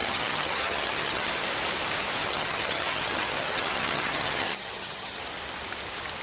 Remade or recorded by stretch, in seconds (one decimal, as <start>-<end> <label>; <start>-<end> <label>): 0.0-1.3 remade; 1.3-2.2 recorded; 2.2-5.2 remade; 5.2-6.2 recorded

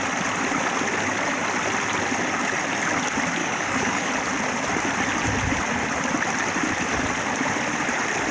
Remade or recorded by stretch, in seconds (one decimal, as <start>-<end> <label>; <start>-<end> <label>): 0.0-3.4 recorded; 3.4-4.1 remade; 4.1-8.3 recorded